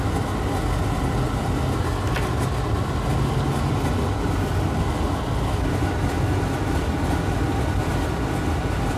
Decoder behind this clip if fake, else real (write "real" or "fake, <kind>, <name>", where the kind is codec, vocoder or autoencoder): real